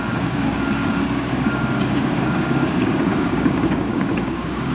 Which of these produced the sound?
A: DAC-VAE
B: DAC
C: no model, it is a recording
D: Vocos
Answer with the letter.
B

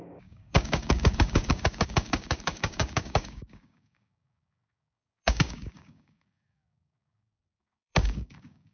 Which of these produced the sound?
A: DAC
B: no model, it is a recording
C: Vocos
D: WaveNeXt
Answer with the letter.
A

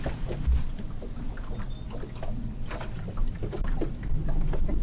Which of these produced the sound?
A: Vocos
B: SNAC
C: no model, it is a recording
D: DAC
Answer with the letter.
C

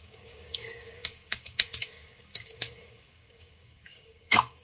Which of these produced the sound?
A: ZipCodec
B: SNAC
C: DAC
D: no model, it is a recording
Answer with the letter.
C